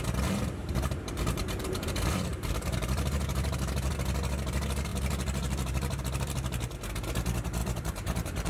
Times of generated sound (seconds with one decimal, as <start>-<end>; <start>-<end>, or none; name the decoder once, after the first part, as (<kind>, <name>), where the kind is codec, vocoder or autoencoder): 0.6-1.9 (vocoder, BigVGAN v2); 2.3-3.9; 4.9-6.0; 7.6-8.5